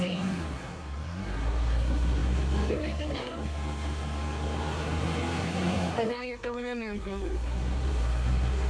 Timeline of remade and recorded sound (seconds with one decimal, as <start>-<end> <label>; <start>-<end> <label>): 0.0-8.7 remade